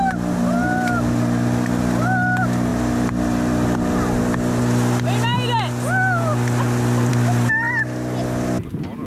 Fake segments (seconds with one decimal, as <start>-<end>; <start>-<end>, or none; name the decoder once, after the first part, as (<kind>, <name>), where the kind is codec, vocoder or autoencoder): none